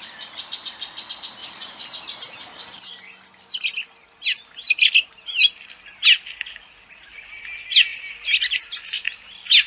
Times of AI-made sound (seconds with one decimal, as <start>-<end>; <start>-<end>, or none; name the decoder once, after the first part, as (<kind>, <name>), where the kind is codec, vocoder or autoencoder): none